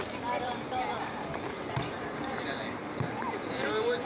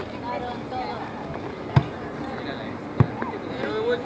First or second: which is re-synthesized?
first